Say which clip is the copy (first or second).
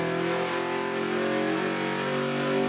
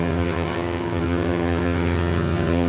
second